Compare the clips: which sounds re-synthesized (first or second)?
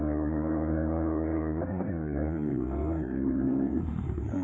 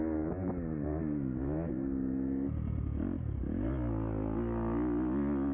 first